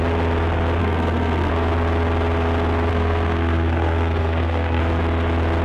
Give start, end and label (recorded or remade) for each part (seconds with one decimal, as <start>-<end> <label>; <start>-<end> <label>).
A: 0.0-0.8 recorded; 0.8-1.5 remade; 1.5-2.9 recorded; 2.9-4.8 remade; 4.8-5.6 recorded